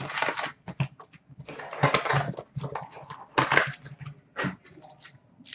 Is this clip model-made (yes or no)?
no